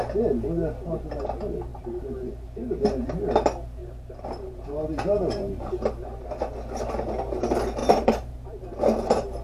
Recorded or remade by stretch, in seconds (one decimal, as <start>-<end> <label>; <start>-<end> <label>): 0.0-1.7 recorded; 1.7-2.3 remade; 2.3-3.8 recorded; 3.8-5.7 remade; 5.7-7.8 recorded; 7.8-9.4 remade